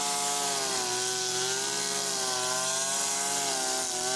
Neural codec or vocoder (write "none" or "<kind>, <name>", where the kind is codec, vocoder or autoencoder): none